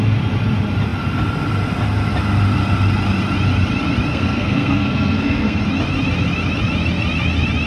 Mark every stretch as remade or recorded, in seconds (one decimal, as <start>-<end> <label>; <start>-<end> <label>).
0.0-4.1 recorded; 4.1-5.6 remade; 5.6-7.7 recorded